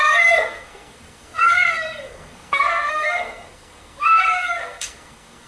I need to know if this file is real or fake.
fake